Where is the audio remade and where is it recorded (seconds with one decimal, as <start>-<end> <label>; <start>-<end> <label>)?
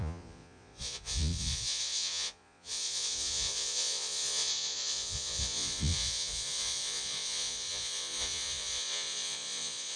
0.0-10.0 remade